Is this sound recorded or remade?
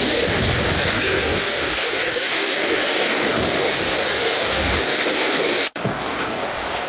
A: remade